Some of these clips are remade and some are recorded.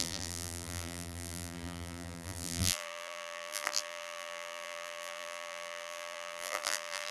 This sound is remade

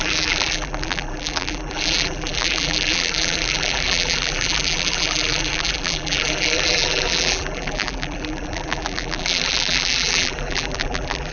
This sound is remade